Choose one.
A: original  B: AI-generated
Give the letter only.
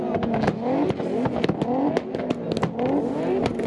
A